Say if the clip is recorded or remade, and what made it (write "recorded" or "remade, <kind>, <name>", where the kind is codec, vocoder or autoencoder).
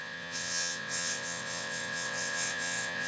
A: remade, vocoder, WaveNeXt